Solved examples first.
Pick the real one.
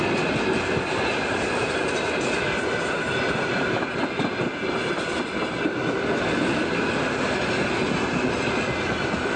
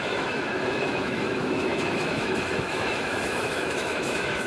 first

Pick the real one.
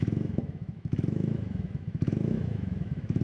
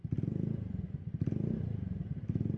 second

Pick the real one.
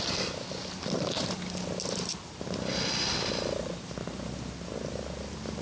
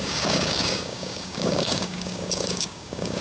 first